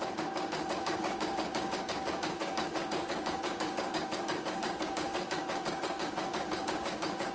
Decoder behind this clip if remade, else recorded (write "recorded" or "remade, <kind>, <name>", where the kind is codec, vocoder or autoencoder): remade, codec, DAC